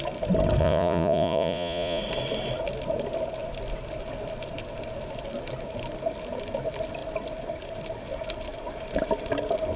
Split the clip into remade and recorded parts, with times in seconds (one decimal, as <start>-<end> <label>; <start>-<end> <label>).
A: 0.0-0.6 recorded; 0.6-2.0 remade; 2.0-9.8 recorded